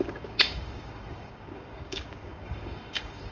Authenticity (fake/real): fake